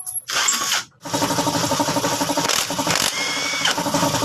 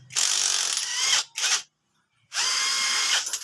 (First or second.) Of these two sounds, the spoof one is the first